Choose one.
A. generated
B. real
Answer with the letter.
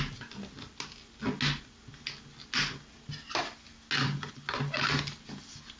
B